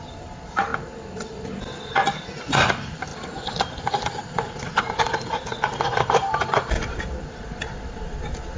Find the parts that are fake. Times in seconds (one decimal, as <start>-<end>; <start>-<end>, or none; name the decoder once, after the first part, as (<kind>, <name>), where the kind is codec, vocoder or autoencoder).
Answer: 0.0-0.7 (vocoder, BigVGAN v2); 1.6-8.6